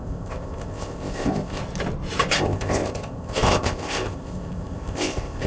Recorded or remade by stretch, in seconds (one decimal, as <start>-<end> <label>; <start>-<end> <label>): 0.0-1.6 remade; 1.6-2.4 recorded; 2.4-5.5 remade